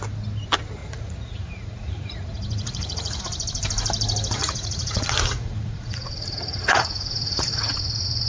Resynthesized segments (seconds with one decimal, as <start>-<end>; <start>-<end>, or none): 0.8-3.2; 4.4-8.3

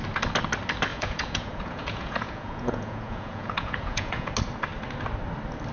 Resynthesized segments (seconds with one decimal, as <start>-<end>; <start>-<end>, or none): 0.9-4.3

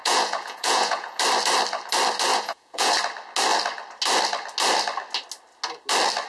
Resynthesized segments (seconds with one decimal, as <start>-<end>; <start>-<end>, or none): 0.0-1.2; 2.3-2.9